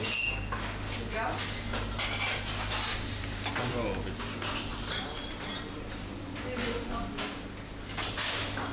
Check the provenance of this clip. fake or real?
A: real